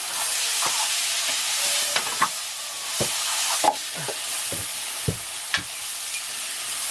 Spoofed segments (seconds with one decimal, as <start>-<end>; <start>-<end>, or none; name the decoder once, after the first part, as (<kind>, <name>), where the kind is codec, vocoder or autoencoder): 4.7-5.8 (vocoder, BigVGAN v2)